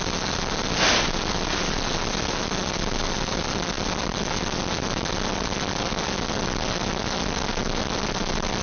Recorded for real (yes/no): yes